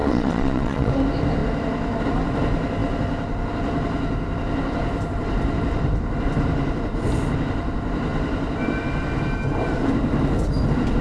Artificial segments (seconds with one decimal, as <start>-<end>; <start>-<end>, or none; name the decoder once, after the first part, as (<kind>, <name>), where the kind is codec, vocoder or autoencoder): 0.0-0.9 (vocoder, Vocos)